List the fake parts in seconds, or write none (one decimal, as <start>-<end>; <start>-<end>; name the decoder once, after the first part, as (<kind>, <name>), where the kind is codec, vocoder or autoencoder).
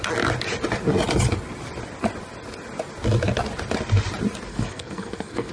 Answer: 4.5-5.5 (codec, SNAC)